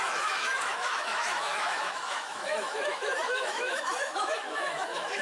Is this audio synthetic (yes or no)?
yes